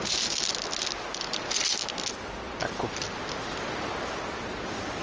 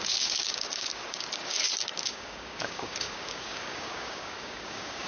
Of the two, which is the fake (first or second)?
second